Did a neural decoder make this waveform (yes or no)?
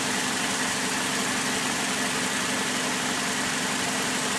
no